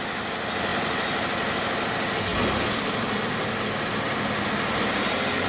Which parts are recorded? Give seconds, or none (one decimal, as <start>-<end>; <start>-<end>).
0.0-5.5